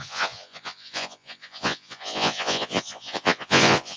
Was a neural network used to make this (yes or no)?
yes